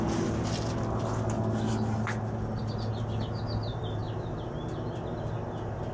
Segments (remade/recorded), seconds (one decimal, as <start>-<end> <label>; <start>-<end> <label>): 0.0-5.9 recorded